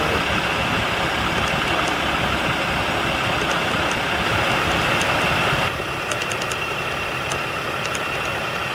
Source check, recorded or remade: recorded